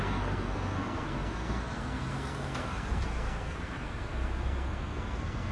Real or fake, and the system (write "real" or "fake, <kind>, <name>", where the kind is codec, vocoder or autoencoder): fake, codec, SNAC